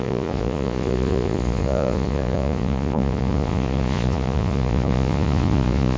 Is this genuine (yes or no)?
no